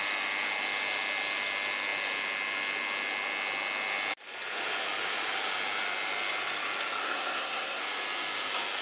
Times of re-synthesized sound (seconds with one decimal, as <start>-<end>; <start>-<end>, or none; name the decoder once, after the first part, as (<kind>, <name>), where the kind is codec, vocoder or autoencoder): 7.0-7.8 (codec, SNAC)